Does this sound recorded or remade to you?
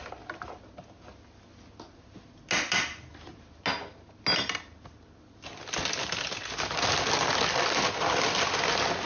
recorded